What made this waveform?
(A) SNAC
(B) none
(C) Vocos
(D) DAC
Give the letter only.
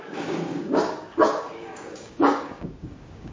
D